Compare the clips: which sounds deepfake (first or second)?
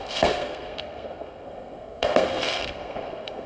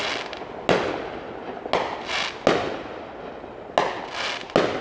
first